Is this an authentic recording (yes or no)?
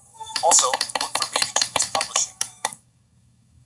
no